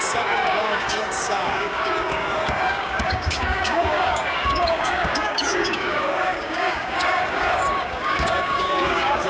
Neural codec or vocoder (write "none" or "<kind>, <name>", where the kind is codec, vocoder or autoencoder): codec, DAC